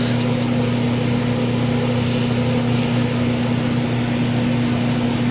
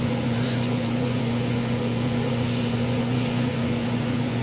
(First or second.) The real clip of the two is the first